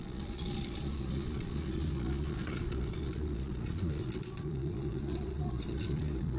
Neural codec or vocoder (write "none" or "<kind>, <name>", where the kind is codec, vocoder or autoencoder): vocoder, Vocos